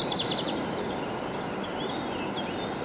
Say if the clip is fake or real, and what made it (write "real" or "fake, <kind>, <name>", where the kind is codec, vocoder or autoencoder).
real